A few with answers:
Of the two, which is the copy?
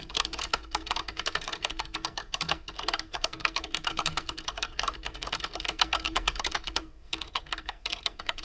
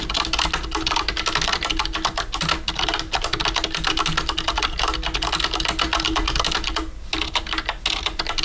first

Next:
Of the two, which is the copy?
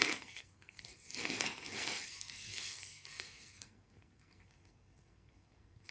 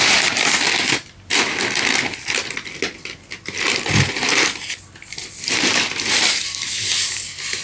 first